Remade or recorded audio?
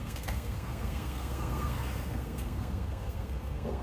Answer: remade